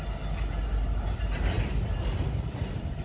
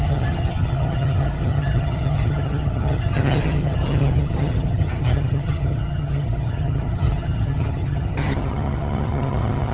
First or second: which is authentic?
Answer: first